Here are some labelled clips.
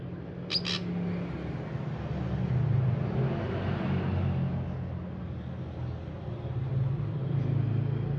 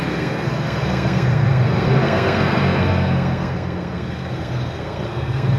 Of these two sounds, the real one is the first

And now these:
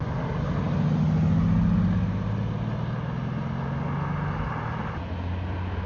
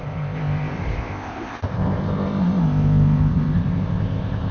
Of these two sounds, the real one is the first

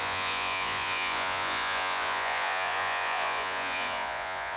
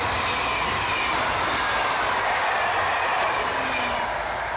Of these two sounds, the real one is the second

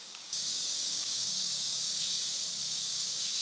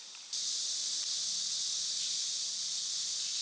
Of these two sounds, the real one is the second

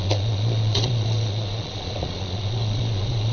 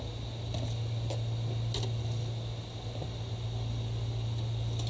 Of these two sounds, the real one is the second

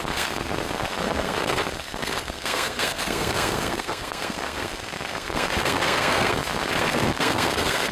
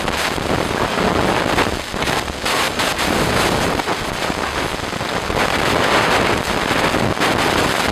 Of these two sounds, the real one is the second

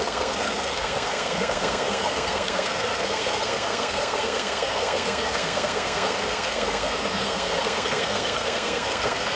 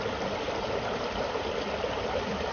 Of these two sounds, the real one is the second